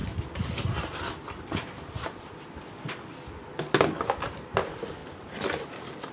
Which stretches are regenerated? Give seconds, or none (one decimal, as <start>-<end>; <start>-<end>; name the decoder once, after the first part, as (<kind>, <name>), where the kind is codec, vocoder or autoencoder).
none